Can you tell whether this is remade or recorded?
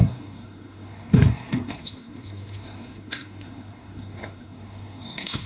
remade